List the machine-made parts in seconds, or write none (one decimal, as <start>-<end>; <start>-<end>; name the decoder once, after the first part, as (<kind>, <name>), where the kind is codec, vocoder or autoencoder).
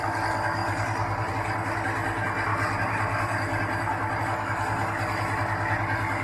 0.6-1.3 (vocoder, BigVGAN v2); 2.5-4.2